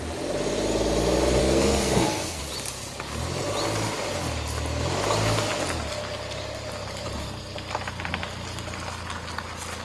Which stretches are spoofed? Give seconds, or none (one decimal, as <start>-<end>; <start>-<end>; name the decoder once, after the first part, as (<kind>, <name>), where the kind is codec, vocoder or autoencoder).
1.4-2.4 (codec, SNAC)